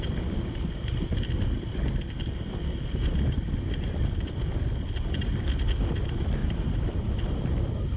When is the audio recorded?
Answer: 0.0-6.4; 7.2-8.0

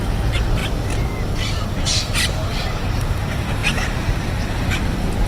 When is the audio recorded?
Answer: 0.0-3.6; 4.3-5.3

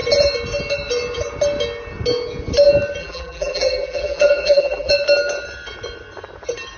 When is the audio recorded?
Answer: 0.0-3.0; 4.9-6.8

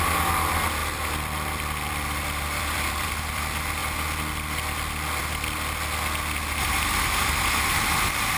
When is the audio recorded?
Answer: 0.0-0.8; 3.4-8.4